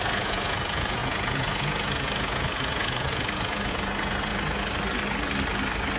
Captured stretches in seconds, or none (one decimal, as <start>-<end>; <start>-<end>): 4.3-6.0